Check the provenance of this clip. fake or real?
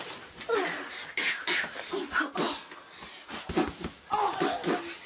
real